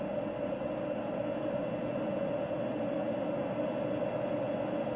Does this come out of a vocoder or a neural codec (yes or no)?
no